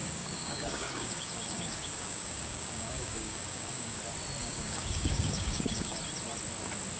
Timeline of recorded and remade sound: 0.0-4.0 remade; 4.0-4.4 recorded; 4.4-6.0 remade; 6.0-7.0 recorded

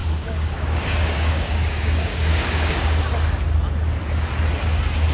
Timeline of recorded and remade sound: 0.0-3.0 remade; 3.0-5.1 recorded

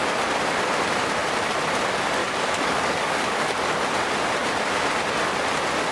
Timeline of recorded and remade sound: 0.0-2.2 recorded; 2.2-3.5 remade; 3.5-5.9 recorded

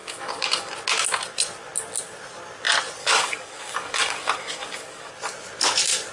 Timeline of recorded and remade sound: 0.0-0.7 remade; 0.7-3.0 recorded; 3.0-5.1 remade; 5.1-6.1 recorded

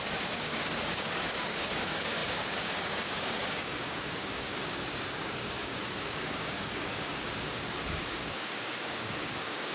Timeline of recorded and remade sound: 0.0-9.7 remade